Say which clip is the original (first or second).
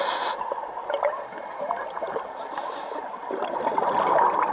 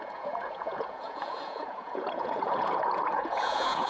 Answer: first